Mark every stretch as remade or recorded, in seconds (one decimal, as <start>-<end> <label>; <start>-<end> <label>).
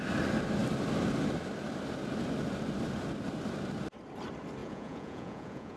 0.0-4.6 recorded; 4.6-5.8 remade